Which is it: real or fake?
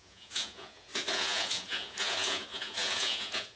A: fake